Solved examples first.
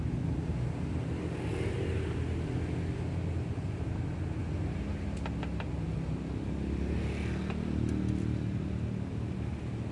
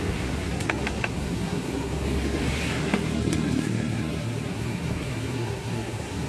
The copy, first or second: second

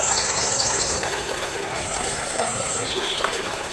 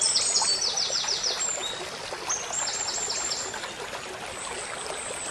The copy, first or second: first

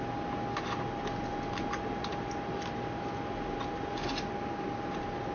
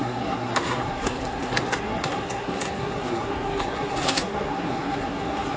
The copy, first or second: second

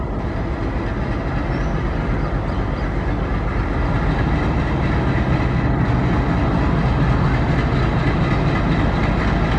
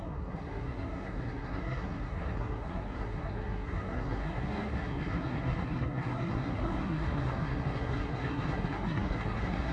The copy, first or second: second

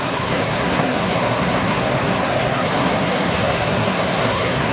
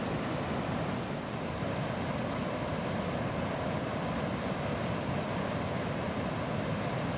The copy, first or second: first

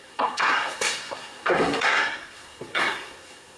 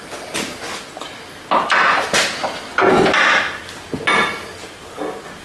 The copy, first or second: first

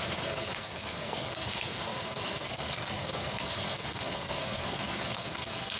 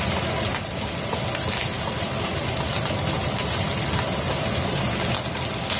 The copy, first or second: first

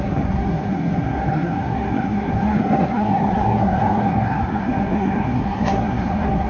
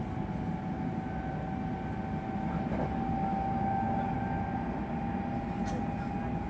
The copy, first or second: first